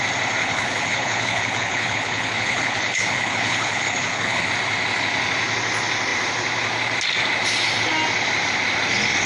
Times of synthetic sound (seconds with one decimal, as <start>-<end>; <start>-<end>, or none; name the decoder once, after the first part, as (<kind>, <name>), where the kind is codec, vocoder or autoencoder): 0.4-4.5 (codec, HILCodec)